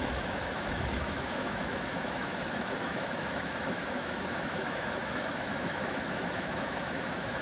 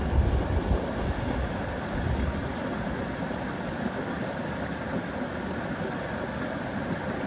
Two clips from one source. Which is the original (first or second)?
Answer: second